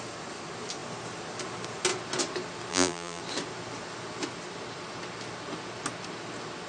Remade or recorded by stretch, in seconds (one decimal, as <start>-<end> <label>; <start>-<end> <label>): 0.0-2.7 recorded; 2.7-3.2 remade; 3.2-6.7 recorded